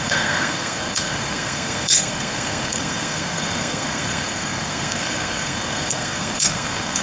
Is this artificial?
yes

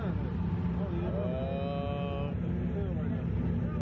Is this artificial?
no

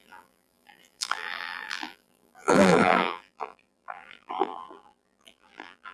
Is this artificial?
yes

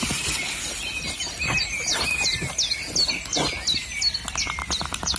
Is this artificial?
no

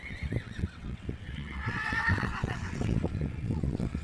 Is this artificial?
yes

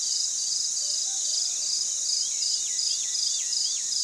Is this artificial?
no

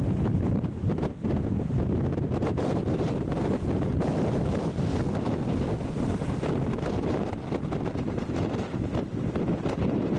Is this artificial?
no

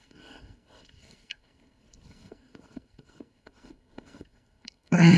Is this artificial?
yes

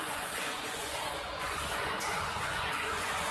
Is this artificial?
yes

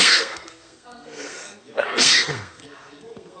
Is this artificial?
yes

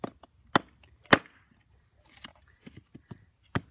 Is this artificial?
no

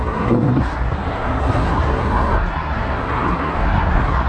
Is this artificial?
yes